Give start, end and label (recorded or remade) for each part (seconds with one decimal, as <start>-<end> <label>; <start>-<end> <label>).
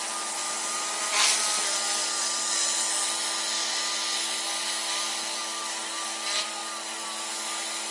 0.0-7.9 recorded